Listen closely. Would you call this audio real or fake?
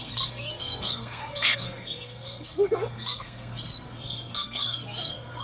fake